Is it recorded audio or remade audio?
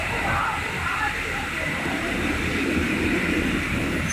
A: remade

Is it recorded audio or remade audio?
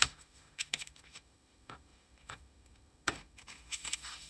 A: remade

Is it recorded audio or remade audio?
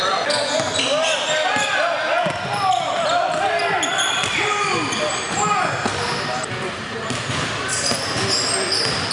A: recorded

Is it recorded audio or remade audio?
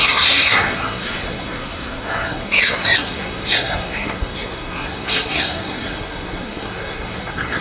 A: remade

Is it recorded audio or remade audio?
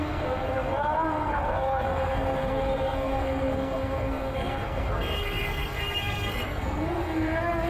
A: remade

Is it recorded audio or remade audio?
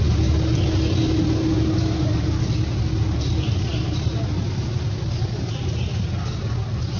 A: recorded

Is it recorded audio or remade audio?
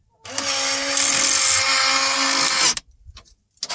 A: recorded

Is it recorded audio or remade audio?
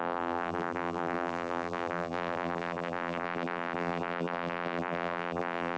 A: remade